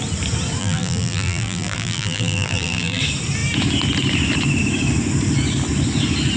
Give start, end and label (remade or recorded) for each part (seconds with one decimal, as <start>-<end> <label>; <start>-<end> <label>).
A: 0.0-0.6 recorded; 0.6-3.0 remade; 3.0-6.4 recorded